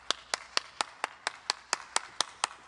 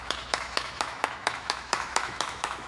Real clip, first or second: first